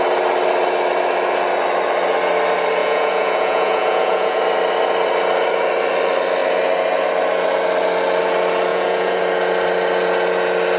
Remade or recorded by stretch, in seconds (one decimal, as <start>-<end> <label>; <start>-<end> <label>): 0.0-2.8 recorded; 2.8-4.4 remade; 4.4-8.7 recorded; 8.7-9.2 remade; 9.2-10.8 recorded

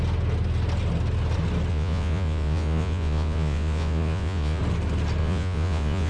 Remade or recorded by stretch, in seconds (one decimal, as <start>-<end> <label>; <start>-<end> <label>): 0.0-1.7 recorded; 1.7-4.6 remade; 4.6-5.2 recorded; 5.2-6.1 remade

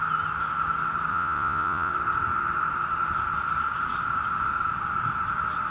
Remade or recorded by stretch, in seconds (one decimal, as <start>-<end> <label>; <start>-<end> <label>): 0.0-1.1 recorded; 1.1-1.9 remade; 1.9-5.7 recorded

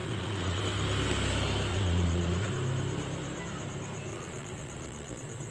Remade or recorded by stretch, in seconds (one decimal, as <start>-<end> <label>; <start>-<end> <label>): 0.0-0.6 remade; 0.6-1.7 recorded; 1.7-2.5 remade; 2.5-4.1 recorded; 4.1-5.5 remade

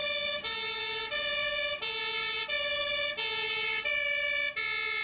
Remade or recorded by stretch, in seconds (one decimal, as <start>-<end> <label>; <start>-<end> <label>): 0.0-5.0 recorded